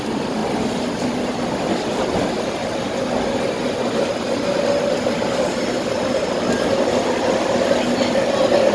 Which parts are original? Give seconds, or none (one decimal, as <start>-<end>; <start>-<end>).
0.0-8.7